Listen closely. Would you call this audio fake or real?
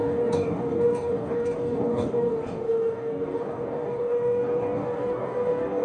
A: fake